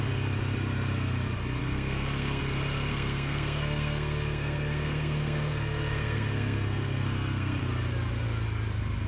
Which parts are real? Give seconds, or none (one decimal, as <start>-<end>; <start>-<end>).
0.0-1.6; 2.4-2.9; 7.6-9.1